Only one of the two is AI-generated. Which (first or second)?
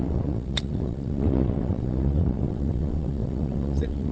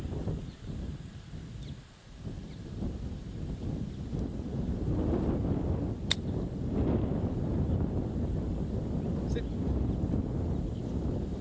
first